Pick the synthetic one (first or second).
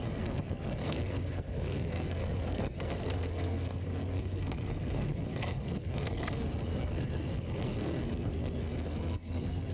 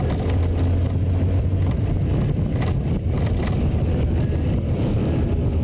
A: first